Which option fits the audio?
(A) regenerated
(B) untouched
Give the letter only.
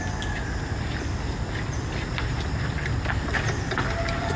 B